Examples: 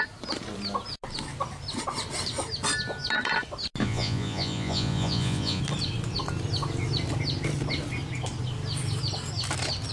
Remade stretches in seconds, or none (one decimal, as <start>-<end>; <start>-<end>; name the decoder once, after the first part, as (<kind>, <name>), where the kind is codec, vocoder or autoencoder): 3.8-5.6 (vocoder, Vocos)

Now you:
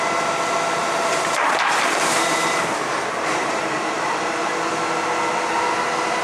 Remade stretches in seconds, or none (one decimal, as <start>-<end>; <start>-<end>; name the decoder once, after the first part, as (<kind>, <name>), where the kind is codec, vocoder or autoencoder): 0.8-4.5 (vocoder, BigVGAN v2)

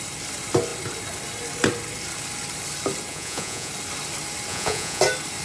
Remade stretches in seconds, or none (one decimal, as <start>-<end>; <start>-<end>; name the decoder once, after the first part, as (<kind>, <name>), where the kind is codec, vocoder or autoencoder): 3.1-3.7 (vocoder, Vocos); 4.5-5.0

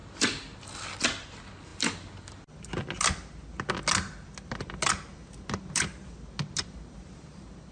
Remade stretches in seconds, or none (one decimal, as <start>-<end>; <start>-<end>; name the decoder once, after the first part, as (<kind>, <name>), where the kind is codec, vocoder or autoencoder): none

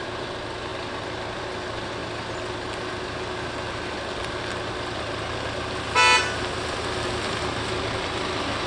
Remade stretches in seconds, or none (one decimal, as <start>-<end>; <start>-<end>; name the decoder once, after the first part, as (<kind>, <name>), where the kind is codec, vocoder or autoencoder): 0.0-0.7 (vocoder, BigVGAN v2); 1.4-2.0; 7.1-8.7

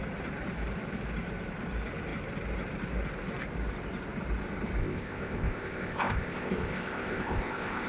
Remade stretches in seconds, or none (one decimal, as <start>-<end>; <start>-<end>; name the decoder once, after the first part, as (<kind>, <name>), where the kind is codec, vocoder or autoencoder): 4.8-7.9 (codec, ZipCodec)

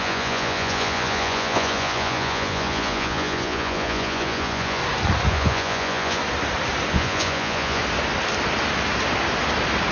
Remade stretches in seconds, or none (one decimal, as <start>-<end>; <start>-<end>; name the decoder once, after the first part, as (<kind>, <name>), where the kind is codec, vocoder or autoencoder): 0.0-4.8 (vocoder, Vocos); 5.3-6.2; 6.9-7.8